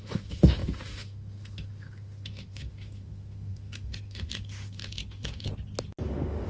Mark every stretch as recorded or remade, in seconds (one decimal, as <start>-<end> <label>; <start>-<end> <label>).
0.0-5.5 remade; 5.5-6.1 recorded; 6.1-6.5 remade